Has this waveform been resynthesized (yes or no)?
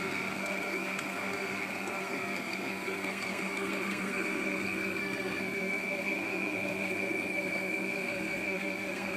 yes